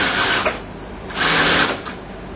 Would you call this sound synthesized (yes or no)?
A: no